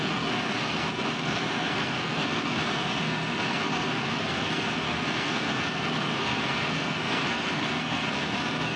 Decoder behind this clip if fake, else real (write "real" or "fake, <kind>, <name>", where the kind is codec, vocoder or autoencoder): fake, codec, SNAC